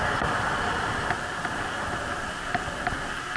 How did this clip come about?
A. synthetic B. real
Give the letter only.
B